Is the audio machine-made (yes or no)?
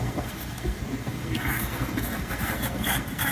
yes